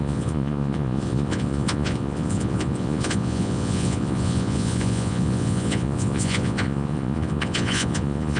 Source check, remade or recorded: remade